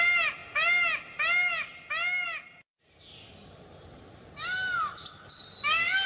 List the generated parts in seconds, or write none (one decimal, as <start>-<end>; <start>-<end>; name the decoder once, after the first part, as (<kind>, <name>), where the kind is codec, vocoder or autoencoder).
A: none